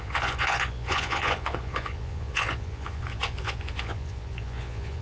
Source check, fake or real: fake